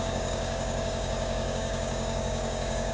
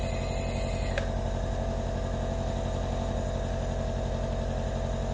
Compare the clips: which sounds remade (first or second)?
first